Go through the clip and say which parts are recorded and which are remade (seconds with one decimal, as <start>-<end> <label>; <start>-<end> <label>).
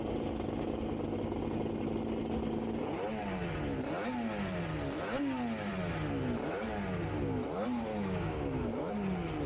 0.0-7.9 recorded; 7.9-8.9 remade; 8.9-9.5 recorded